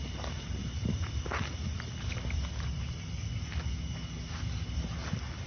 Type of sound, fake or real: real